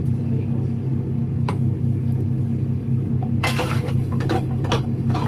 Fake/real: fake